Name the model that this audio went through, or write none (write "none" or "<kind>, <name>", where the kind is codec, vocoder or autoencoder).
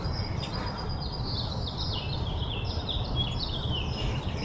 none